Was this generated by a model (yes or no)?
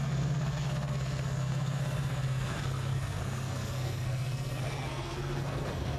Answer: yes